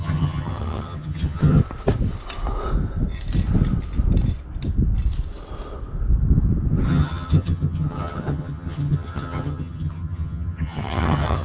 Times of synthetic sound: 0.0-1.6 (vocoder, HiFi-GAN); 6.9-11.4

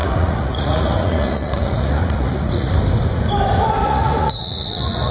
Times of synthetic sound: 0.0-2.7 (vocoder, Vocos); 3.8-5.1

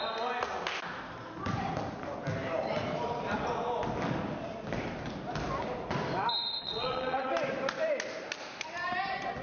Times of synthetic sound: 6.6-7.3 (vocoder, WaveNeXt)

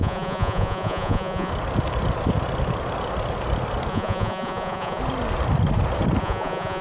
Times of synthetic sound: 0.0-1.5 (vocoder, Vocos); 3.9-5.0; 6.2-6.8

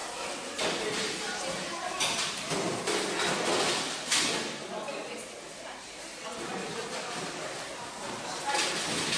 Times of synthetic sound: none

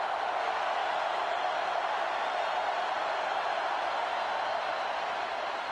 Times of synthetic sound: none